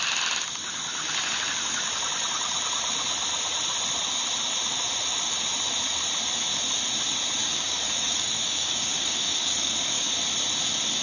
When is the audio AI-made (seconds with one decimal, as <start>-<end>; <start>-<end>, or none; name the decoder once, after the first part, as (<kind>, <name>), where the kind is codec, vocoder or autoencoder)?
7.4-10.1 (codec, DAC)

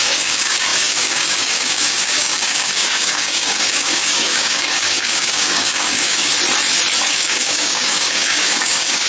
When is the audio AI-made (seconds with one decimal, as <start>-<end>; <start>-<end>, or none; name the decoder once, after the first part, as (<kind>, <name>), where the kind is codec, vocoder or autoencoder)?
0.0-6.3 (codec, DAC); 7.1-9.1